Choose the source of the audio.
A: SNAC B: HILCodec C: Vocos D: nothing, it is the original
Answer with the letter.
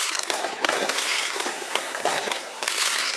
A